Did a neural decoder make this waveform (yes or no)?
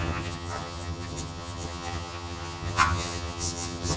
yes